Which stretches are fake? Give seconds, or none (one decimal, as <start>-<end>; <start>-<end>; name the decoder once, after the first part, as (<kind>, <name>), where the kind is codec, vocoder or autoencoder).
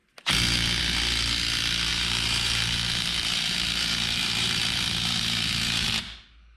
1.9-5.9 (vocoder, BigVGAN v2)